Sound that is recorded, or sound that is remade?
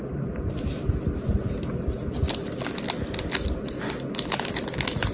recorded